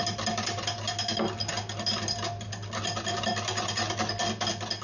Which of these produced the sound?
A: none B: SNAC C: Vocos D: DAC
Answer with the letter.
A